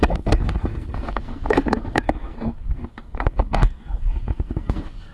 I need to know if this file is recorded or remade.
remade